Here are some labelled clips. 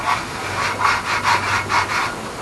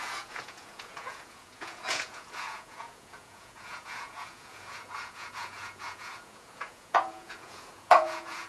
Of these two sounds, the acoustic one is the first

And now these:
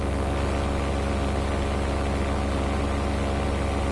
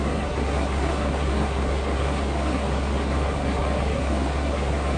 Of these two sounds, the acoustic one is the first